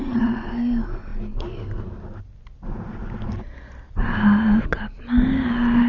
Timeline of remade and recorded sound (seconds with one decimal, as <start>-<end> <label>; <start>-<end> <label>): 0.0-0.5 remade; 0.5-5.9 recorded